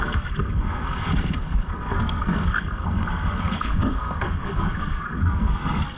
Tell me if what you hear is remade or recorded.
remade